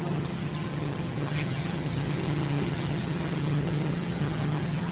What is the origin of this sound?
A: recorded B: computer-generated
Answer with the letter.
B